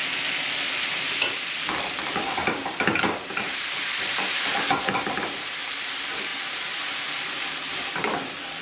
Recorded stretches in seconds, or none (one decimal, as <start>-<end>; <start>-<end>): 0.0-0.8; 6.3-7.9